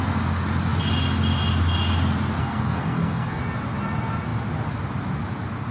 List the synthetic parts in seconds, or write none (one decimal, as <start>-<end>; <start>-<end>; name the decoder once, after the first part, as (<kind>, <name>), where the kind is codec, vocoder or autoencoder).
2.4-3.4 (codec, SNAC)